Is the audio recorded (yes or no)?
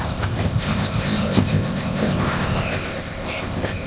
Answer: no